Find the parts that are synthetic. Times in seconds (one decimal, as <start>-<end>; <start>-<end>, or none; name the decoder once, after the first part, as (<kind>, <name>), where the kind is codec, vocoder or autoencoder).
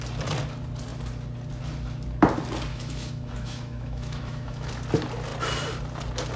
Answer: 2.7-4.7 (autoencoder, DAC-VAE)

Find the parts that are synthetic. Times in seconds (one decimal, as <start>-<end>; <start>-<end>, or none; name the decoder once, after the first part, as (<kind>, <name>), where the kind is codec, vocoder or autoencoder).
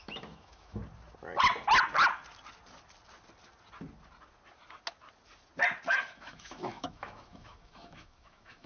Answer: 0.0-0.8 (autoencoder, DAC-VAE); 5.9-8.7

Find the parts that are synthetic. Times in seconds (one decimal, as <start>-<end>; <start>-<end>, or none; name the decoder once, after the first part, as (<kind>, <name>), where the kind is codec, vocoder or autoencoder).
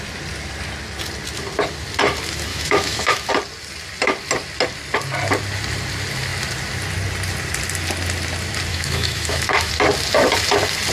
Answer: 2.5-3.3 (autoencoder, DAC-VAE); 8.7-9.7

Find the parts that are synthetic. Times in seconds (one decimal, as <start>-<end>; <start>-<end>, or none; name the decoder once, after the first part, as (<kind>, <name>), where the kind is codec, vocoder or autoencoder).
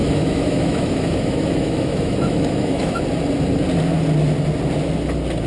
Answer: 0.0-3.0 (autoencoder, DAC-VAE)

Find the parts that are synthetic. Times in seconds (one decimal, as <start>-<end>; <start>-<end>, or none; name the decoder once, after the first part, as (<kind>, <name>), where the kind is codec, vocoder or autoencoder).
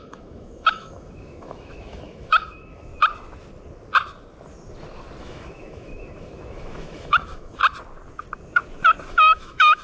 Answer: 0.0-2.9 (autoencoder, DAC-VAE); 5.2-7.6; 9.1-9.8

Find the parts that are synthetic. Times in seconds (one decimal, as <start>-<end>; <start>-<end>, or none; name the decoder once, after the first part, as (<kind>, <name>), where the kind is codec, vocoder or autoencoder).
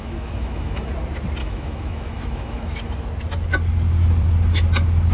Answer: 0.0-0.9 (autoencoder, DAC-VAE); 1.4-3.0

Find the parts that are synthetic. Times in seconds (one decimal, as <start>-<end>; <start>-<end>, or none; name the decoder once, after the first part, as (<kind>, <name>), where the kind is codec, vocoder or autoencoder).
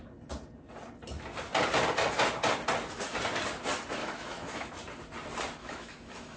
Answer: 4.0-4.7 (autoencoder, DAC-VAE); 5.6-6.4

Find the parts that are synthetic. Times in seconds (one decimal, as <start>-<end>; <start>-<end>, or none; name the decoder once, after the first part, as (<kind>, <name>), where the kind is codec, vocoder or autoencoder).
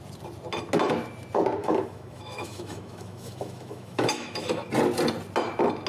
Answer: 1.6-4.7 (autoencoder, DAC-VAE)